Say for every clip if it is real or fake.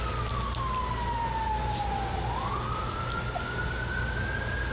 real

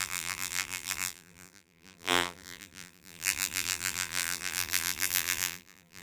fake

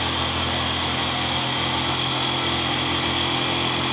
real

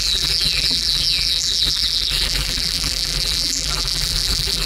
fake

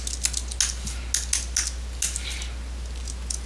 real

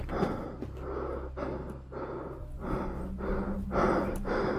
real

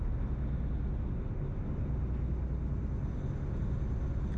real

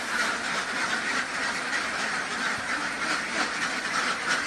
real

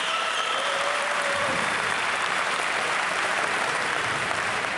fake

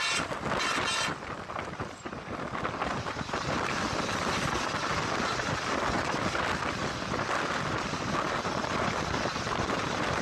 real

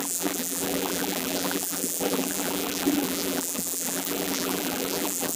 fake